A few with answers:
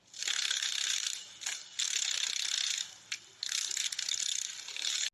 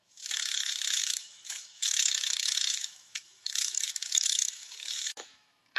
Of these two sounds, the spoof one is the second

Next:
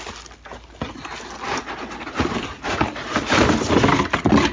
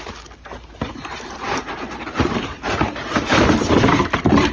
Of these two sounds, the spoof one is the second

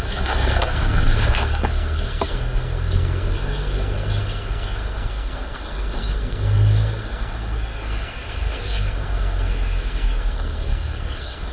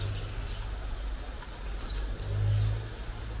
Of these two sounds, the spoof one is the first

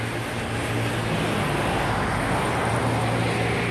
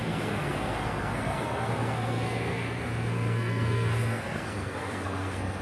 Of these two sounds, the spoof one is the second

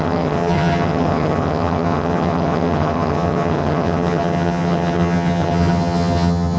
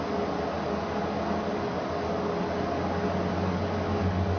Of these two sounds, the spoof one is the first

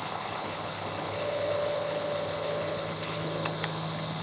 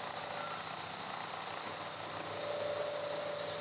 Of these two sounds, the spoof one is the first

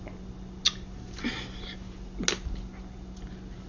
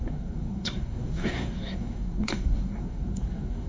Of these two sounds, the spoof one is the second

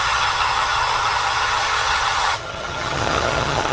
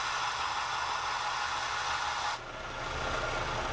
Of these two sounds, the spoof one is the first